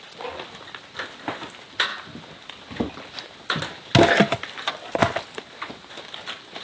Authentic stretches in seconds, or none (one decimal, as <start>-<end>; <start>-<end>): 0.0-6.6

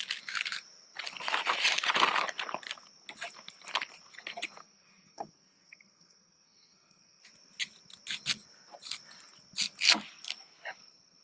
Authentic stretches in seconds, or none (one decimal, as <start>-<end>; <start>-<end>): 0.0-4.6; 7.2-11.2

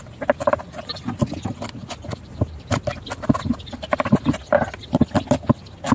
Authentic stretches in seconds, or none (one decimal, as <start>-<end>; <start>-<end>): 0.0-1.8; 5.3-5.9

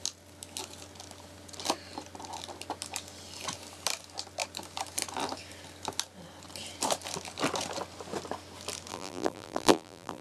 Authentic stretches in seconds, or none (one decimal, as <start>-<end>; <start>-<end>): 0.0-8.9

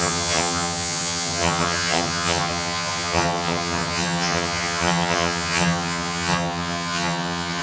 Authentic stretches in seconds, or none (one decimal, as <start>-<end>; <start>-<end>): none

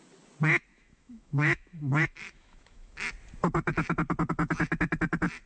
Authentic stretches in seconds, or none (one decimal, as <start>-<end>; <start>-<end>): 0.0-0.7; 3.1-5.5

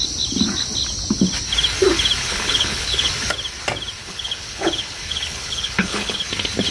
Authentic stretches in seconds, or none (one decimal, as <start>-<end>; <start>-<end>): 0.0-2.2; 3.1-4.0; 6.3-6.7